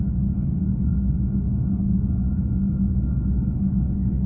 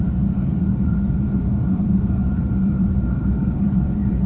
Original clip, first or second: first